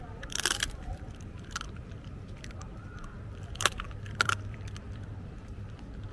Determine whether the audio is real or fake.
fake